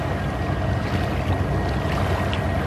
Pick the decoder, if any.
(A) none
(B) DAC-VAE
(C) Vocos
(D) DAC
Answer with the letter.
A